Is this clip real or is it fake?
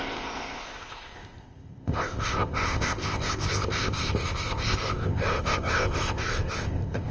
fake